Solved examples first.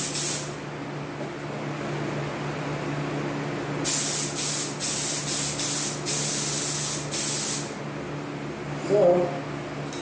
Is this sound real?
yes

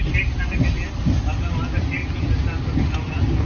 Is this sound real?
yes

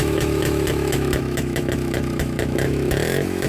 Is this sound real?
no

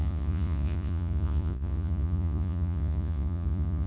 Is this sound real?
no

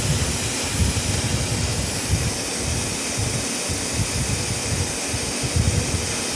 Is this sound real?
yes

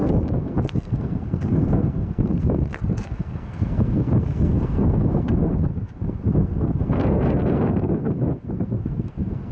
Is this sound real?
no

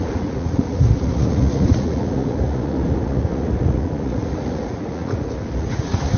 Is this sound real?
no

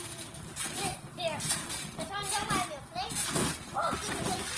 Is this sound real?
yes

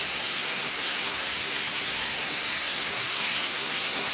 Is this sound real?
no